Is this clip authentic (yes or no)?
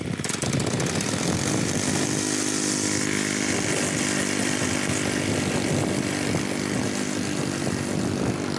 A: yes